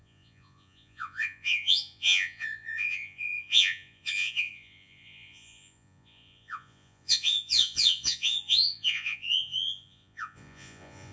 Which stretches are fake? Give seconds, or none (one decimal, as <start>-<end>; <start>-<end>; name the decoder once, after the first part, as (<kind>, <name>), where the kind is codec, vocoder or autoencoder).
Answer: 0.0-11.1 (vocoder, Vocos)